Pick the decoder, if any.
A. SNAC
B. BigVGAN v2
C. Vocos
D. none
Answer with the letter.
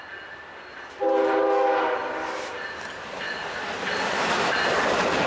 D